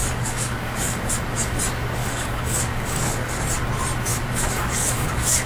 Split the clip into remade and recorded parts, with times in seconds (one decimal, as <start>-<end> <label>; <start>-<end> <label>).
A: 0.0-1.1 remade; 1.1-2.0 recorded; 2.0-3.4 remade; 3.4-4.1 recorded; 4.1-5.5 remade